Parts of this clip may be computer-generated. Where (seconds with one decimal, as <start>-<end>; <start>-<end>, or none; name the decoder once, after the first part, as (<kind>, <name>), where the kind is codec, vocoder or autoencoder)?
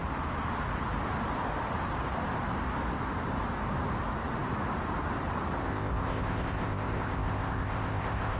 5.6-8.4 (codec, ZipCodec)